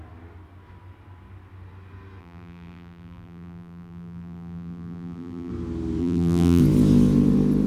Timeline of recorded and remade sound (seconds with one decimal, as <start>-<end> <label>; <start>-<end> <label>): 0.0-2.2 recorded; 2.2-5.5 remade; 5.5-6.0 recorded; 6.0-6.6 remade; 6.6-7.7 recorded